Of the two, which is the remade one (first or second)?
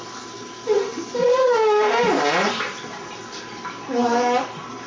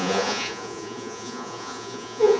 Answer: second